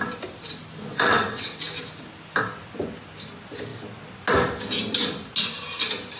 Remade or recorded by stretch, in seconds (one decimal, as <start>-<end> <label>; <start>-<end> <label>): 0.0-0.9 recorded; 0.9-1.6 remade; 1.6-6.2 recorded